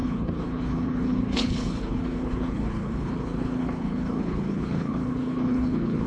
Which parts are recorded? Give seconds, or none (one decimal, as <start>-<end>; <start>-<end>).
none